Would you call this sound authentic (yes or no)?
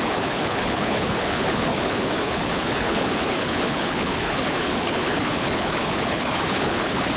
no